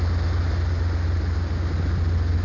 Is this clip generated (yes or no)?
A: no